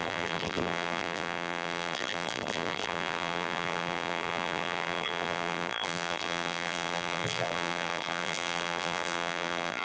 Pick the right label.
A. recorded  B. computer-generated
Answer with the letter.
B